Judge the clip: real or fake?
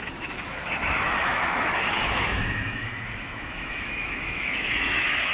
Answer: fake